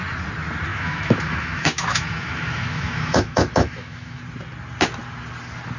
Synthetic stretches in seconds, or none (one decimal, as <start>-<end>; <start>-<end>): 0.7-4.2